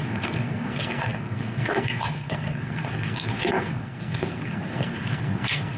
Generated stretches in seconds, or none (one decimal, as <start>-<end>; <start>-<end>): 0.0-5.8